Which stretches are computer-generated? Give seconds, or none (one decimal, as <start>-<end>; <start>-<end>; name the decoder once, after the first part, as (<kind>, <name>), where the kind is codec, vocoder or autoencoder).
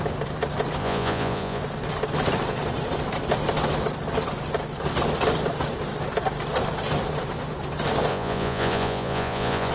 0.8-1.6 (vocoder, Vocos); 8.1-9.7